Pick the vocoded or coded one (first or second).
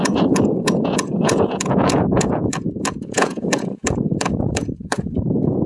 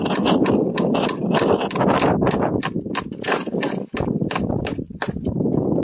first